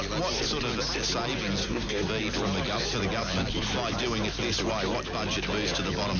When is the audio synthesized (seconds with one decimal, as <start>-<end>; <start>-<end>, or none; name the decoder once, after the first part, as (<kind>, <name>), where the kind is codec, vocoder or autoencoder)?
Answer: 1.6-2.1 (codec, SNAC)

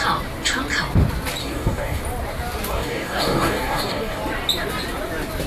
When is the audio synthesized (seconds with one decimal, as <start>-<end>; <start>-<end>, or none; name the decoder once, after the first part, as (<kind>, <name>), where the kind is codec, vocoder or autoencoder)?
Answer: 1.4-2.0 (codec, DAC); 2.7-4.2

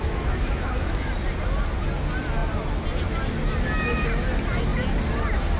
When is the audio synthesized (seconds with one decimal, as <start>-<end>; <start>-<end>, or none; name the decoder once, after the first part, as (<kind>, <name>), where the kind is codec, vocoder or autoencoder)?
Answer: 0.0-1.1 (autoencoder, DAC-VAE)